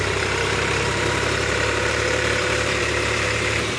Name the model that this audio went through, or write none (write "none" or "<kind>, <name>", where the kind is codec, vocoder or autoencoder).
vocoder, BigVGAN v2